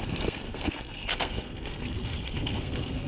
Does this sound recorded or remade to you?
remade